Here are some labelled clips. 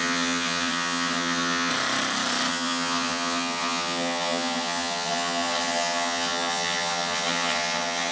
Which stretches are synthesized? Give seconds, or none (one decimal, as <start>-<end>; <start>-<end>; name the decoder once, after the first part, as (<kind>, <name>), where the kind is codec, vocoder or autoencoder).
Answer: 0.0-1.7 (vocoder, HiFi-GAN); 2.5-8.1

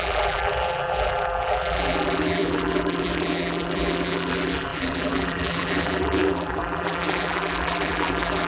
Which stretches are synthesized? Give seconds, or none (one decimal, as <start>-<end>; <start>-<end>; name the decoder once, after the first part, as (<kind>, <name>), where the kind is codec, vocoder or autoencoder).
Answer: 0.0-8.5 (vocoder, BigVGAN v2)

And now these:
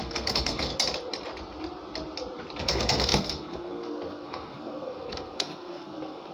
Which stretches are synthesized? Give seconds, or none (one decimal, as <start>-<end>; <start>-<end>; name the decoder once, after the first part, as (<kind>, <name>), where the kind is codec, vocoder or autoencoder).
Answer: 0.0-0.7 (codec, SNAC); 2.6-6.3

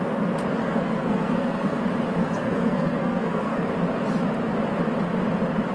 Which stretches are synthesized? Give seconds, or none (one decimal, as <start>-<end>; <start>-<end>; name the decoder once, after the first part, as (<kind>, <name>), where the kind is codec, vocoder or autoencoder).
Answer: 0.6-1.8 (codec, SNAC); 2.2-3.7